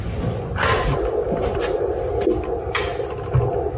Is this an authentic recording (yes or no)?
yes